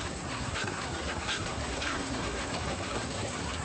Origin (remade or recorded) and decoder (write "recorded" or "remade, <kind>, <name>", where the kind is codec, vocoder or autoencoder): remade, codec, SNAC